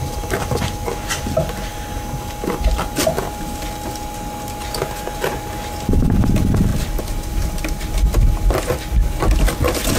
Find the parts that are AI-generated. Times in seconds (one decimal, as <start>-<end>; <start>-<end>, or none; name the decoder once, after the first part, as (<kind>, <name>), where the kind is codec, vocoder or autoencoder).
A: none